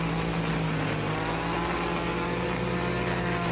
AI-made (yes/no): no